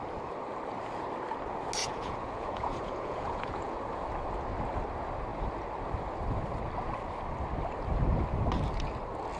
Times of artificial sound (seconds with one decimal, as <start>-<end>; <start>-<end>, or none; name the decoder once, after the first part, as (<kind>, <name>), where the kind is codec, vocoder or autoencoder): 1.8-3.7 (vocoder, Vocos)